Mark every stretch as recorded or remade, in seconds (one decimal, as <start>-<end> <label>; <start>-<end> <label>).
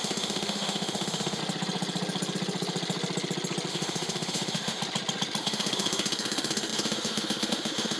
0.0-1.4 remade; 1.4-3.7 recorded; 3.7-4.8 remade; 4.8-5.4 recorded; 5.4-8.0 remade